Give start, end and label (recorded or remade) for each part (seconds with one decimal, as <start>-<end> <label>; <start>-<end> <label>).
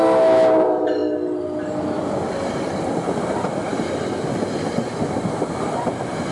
0.0-6.3 recorded